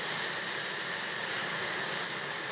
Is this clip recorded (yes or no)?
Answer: yes